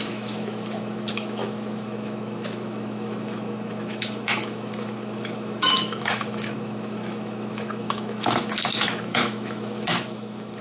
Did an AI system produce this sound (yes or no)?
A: yes